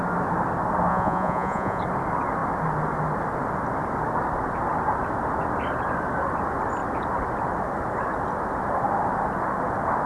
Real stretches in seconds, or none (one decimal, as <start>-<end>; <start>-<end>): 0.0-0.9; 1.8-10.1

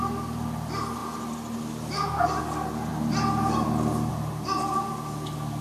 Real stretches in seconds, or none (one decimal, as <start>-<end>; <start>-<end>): 0.0-5.6

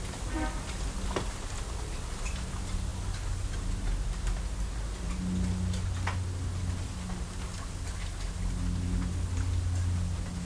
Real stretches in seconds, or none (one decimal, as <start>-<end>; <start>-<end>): 0.0-10.4